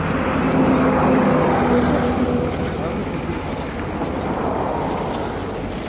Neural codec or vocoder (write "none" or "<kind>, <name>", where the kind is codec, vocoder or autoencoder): none